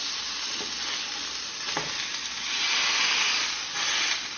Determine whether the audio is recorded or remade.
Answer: recorded